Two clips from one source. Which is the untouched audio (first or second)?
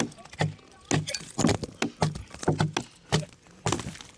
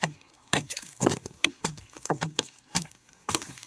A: first